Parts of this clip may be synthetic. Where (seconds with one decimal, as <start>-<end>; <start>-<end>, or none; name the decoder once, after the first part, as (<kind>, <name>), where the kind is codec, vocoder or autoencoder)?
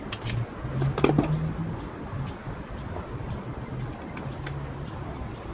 none